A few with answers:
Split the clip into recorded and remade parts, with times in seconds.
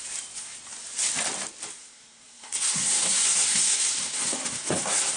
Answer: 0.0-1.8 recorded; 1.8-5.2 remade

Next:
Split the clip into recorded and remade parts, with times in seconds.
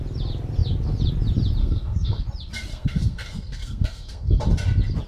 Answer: 0.0-1.6 recorded; 1.6-2.2 remade; 2.2-2.7 recorded; 2.7-4.4 remade; 4.4-5.1 recorded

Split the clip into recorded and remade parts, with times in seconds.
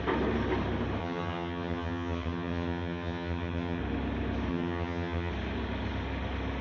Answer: 0.0-1.0 recorded; 1.0-3.8 remade; 3.8-4.5 recorded; 4.5-5.3 remade; 5.3-6.6 recorded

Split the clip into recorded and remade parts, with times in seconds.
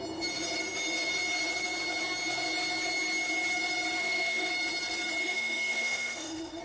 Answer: 0.0-4.0 recorded; 4.0-4.5 remade; 4.5-5.2 recorded; 5.2-6.6 remade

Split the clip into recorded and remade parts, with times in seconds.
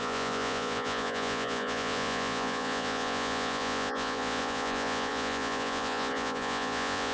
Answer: 0.0-7.1 remade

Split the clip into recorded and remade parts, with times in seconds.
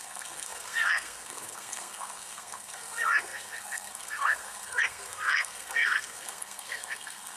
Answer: 0.0-7.4 remade